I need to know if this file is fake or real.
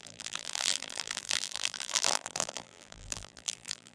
fake